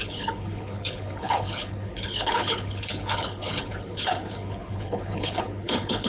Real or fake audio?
fake